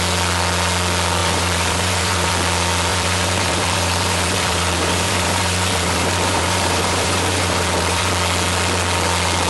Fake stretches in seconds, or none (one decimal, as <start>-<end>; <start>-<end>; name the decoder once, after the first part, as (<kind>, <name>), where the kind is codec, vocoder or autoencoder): 1.2-2.3 (vocoder, BigVGAN v2); 2.9-8.1